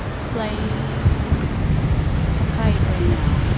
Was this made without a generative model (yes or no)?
yes